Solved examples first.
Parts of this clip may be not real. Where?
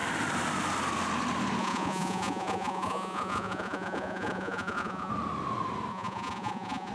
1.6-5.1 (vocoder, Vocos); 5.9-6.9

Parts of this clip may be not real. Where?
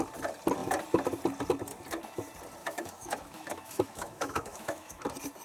2.6-5.0 (autoencoder, DAC-VAE)